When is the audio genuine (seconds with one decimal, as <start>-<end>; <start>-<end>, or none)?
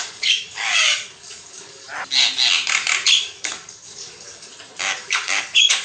1.9-3.2; 4.5-5.0